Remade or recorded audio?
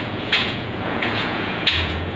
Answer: remade